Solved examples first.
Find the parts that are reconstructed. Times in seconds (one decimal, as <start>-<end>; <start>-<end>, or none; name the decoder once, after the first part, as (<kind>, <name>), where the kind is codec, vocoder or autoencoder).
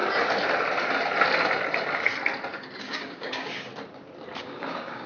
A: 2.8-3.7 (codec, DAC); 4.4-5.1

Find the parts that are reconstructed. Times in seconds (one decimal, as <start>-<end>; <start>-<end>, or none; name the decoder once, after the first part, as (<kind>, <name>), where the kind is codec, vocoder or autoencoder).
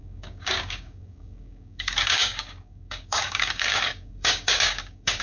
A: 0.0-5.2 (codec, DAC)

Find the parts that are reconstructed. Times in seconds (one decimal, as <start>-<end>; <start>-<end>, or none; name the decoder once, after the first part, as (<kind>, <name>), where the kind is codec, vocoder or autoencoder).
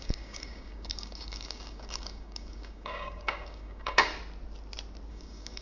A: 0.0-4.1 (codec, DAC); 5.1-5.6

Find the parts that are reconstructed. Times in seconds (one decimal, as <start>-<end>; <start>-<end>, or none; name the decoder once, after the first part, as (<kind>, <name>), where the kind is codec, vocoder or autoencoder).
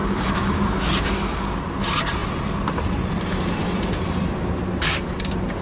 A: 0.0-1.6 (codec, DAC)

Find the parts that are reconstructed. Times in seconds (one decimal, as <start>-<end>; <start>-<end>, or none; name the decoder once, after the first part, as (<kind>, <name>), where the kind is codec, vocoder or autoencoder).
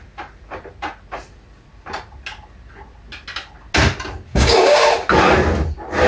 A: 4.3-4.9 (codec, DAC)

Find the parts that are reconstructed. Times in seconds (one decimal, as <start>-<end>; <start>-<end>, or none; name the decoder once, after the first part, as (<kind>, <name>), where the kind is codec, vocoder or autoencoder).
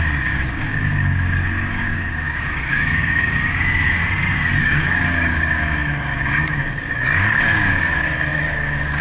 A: 0.0-4.0 (codec, DAC); 4.6-9.0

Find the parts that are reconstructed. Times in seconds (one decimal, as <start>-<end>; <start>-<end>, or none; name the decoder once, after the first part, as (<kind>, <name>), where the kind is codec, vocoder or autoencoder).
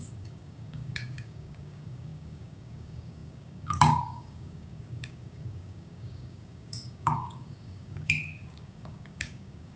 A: 0.0-9.8 (codec, DAC)